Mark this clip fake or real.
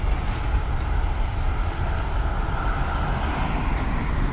real